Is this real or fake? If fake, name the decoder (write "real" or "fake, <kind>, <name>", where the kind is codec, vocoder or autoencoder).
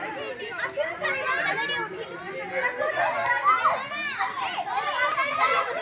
real